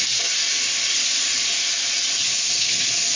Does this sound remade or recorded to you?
recorded